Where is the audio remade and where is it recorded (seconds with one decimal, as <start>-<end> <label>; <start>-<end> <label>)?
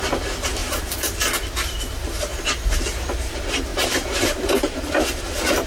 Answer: 0.0-0.6 recorded; 0.6-3.3 remade; 3.3-3.7 recorded; 3.7-5.2 remade; 5.2-5.7 recorded